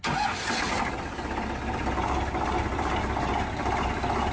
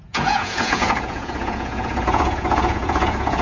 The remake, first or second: second